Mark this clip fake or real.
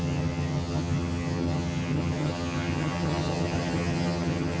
fake